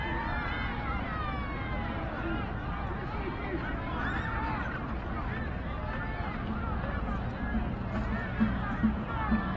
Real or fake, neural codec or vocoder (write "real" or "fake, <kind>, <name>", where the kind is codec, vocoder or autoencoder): real